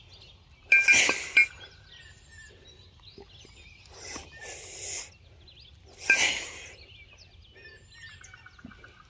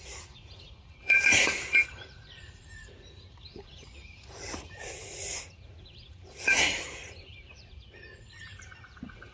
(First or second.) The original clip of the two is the first